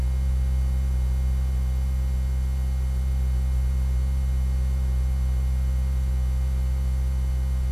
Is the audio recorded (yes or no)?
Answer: yes